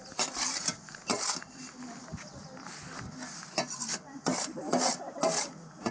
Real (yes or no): yes